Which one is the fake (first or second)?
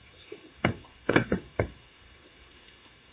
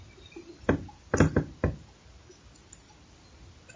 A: first